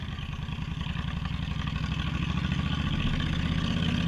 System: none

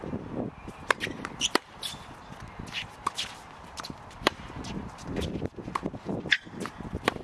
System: vocoder, BigVGAN v2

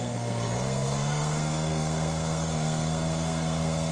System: codec, SNAC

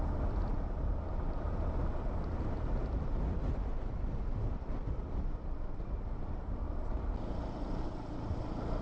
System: none